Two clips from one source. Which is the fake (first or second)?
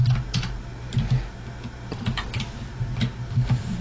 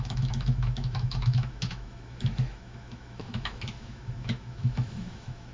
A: second